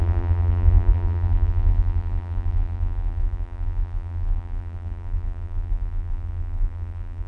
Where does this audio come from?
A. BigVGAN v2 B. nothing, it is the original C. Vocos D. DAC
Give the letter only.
A